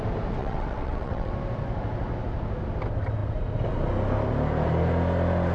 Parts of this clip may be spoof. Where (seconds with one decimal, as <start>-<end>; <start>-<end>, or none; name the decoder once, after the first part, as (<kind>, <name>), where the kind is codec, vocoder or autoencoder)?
0.4-1.3 (vocoder, WaveNeXt)